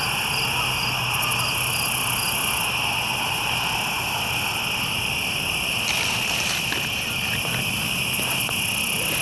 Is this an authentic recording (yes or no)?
yes